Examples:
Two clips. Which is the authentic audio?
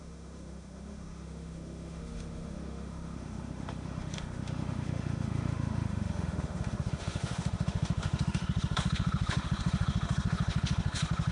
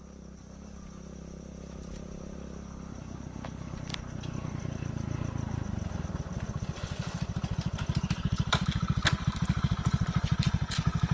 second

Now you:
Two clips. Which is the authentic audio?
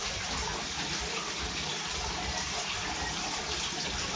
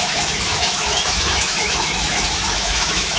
first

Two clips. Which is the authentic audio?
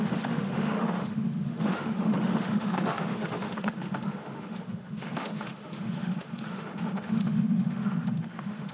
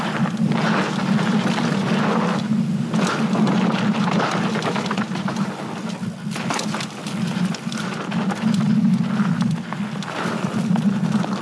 second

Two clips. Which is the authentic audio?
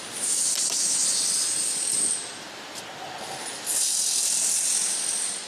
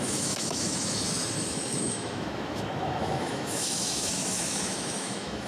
first